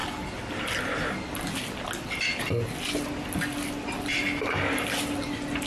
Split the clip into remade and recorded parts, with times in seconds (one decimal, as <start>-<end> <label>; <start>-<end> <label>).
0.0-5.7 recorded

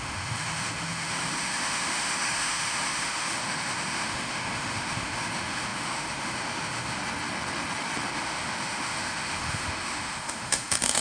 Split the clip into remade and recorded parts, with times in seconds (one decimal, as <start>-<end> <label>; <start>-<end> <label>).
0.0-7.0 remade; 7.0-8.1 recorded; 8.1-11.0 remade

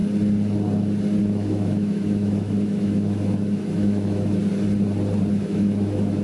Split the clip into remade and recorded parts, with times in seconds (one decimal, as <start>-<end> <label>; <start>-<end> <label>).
0.0-1.2 recorded; 1.2-4.4 remade; 4.4-5.3 recorded; 5.3-6.2 remade